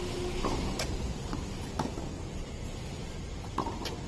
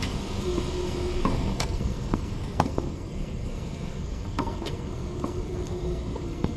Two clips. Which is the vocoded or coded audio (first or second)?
second